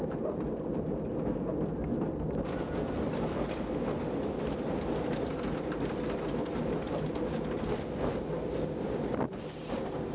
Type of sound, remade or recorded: recorded